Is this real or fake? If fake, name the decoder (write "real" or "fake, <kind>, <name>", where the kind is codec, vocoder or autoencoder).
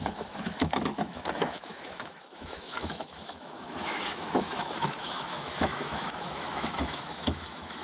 fake, autoencoder, DAC-VAE